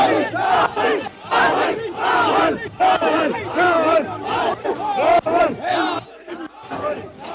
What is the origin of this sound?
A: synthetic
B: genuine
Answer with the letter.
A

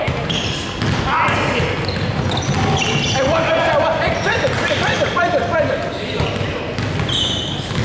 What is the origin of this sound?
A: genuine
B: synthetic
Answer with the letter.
A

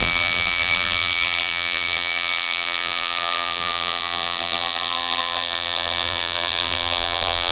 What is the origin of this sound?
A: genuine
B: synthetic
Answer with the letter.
B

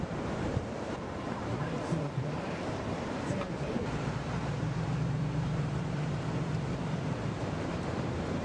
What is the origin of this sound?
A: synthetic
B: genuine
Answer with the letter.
A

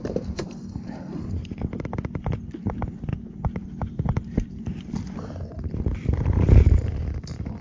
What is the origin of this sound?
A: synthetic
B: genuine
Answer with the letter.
A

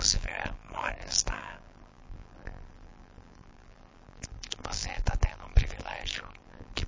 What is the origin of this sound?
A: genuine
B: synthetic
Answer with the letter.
B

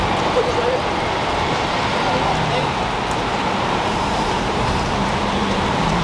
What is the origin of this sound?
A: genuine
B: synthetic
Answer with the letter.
B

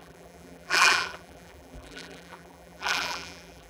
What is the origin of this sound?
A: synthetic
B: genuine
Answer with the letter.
A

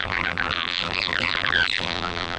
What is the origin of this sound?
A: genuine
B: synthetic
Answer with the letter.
B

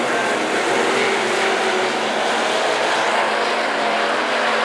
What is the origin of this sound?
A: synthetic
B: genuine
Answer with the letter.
B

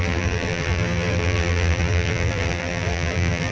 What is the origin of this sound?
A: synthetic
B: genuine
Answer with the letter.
A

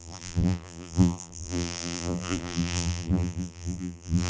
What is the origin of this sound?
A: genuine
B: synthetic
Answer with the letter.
B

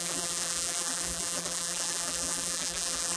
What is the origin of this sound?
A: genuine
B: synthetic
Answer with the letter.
B